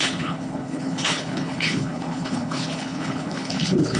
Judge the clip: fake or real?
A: fake